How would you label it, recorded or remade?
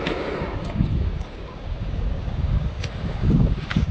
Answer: remade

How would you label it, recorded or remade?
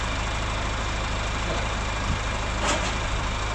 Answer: recorded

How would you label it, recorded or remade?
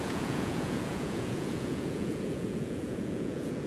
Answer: remade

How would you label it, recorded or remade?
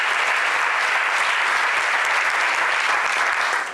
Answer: recorded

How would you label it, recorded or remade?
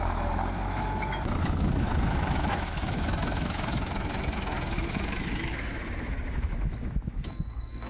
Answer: remade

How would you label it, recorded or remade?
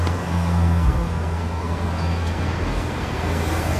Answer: remade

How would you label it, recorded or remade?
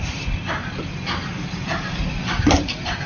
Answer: recorded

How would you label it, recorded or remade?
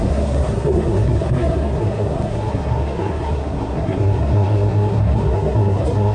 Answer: remade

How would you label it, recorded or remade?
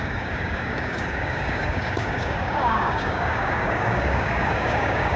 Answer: remade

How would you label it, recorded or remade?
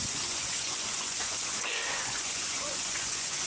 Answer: remade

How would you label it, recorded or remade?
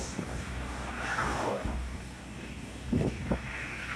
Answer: remade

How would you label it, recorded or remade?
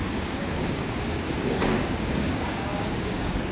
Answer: remade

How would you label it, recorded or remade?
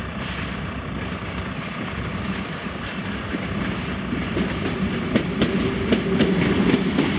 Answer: recorded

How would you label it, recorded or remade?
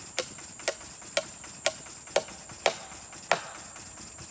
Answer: recorded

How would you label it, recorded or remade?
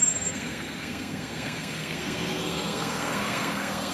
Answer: remade